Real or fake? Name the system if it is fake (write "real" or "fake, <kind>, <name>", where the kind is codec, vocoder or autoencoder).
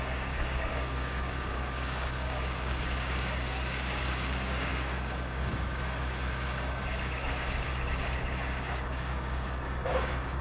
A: fake, codec, DAC